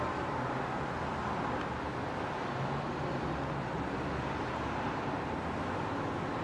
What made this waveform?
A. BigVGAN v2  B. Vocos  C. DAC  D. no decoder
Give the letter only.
D